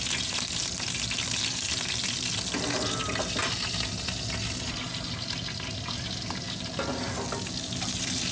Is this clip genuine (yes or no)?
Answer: yes